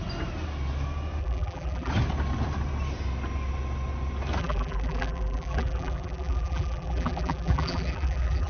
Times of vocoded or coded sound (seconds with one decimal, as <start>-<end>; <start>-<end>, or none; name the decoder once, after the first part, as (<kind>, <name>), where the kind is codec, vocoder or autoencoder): 1.2-1.9 (vocoder, BigVGAN v2); 4.4-8.5